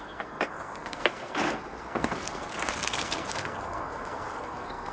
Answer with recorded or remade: remade